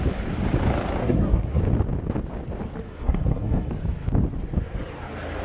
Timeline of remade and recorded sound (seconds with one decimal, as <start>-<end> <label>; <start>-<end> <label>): 0.0-1.0 recorded; 1.0-1.6 remade; 1.6-2.9 recorded; 2.9-3.7 remade; 3.7-5.4 recorded